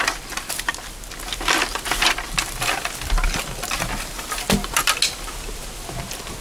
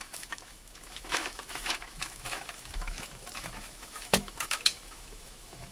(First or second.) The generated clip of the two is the second